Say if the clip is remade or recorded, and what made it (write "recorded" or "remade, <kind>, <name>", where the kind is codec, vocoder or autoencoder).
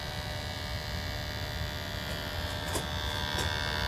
recorded